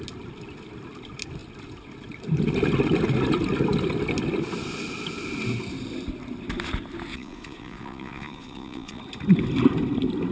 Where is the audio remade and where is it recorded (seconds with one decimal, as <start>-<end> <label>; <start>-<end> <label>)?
0.0-7.1 recorded; 7.1-9.0 remade; 9.0-10.3 recorded